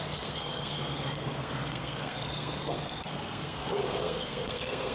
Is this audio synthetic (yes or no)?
yes